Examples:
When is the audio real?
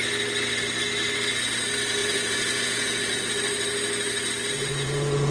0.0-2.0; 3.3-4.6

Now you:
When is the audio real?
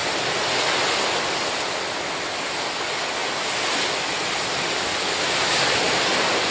0.0-6.5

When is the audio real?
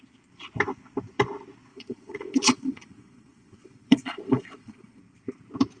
0.0-1.7; 5.0-5.8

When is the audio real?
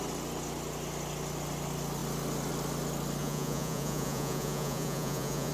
0.0-3.2